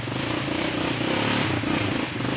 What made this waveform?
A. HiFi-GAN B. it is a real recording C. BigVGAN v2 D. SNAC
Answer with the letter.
B